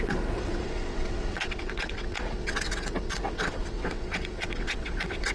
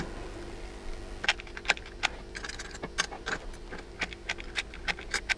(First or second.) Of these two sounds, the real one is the second